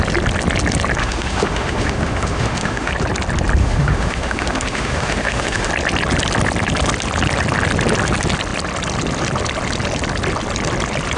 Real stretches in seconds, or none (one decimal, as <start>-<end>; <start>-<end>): 0.0-1.0; 2.9-3.6; 5.7-11.2